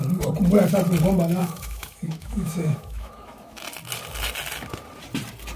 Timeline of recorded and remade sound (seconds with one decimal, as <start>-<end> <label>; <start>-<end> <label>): 0.0-1.4 recorded; 1.4-3.6 remade; 3.6-5.6 recorded